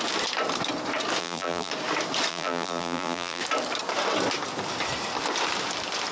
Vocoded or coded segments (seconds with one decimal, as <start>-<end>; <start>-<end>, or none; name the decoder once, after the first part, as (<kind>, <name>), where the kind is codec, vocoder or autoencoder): 1.2-1.7 (vocoder, BigVGAN v2); 2.3-3.4